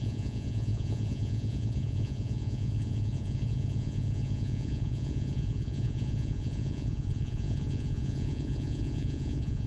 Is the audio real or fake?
fake